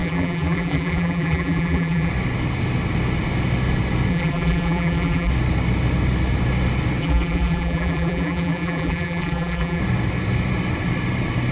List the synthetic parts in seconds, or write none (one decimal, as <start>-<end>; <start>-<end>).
0.0-2.1; 4.1-5.3; 7.0-9.8